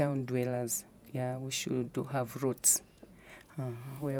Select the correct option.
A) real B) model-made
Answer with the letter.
B